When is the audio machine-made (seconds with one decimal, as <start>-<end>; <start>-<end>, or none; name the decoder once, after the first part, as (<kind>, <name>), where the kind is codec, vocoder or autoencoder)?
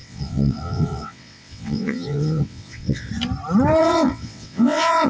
0.0-3.1 (vocoder, WaveNeXt); 3.8-5.1